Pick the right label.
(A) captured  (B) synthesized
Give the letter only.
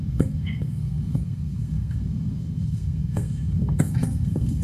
B